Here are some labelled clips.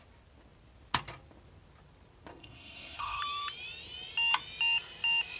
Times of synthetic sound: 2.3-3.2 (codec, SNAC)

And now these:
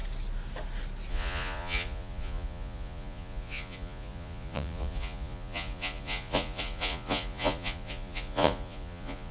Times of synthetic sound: 1.1-9.3 (vocoder, Vocos)